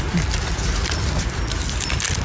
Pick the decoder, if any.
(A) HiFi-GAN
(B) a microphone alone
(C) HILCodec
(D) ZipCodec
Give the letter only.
B